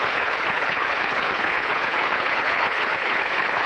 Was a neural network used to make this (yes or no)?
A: yes